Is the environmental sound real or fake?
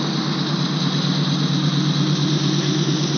real